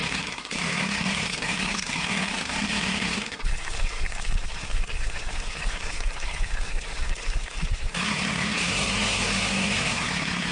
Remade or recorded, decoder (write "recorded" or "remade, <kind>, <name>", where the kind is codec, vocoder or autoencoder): remade, codec, SNAC